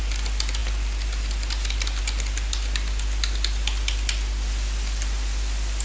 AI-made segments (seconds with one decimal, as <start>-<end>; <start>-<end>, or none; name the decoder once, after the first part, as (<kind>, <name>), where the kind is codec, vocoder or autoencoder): none